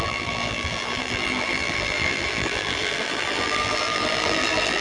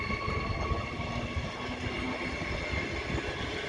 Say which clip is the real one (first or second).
second